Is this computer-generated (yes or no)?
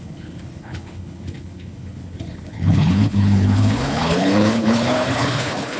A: yes